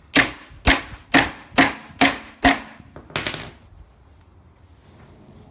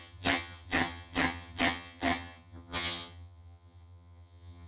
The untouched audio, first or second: first